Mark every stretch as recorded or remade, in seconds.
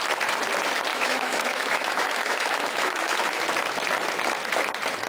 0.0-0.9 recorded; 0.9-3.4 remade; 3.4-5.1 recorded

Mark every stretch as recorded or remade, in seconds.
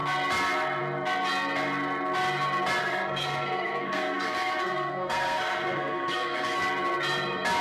0.0-2.8 recorded; 2.8-6.6 remade; 6.6-7.6 recorded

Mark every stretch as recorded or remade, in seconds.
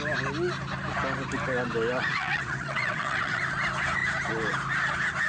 0.0-2.1 recorded; 2.1-3.4 remade; 3.4-5.3 recorded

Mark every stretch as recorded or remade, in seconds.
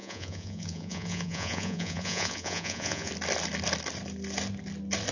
0.0-3.1 remade; 3.1-5.1 recorded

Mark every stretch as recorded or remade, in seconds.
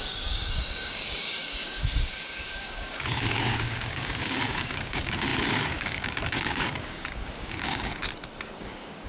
0.0-8.0 remade; 8.0-8.6 recorded; 8.6-9.1 remade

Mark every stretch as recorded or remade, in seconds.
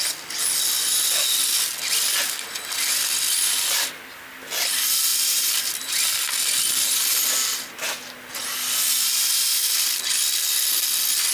0.0-11.3 recorded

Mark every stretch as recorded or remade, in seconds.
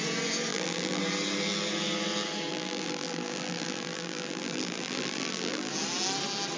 0.0-0.5 recorded; 0.5-1.0 remade; 1.0-2.5 recorded; 2.5-5.7 remade; 5.7-6.6 recorded